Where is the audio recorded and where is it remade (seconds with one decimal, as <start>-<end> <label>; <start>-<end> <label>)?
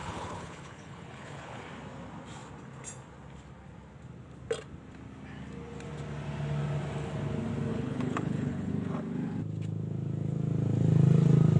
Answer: 0.0-1.6 remade; 1.6-7.7 recorded; 7.7-8.7 remade; 8.7-11.6 recorded